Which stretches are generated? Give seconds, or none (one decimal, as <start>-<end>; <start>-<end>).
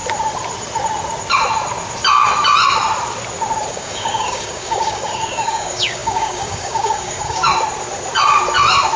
3.7-7.4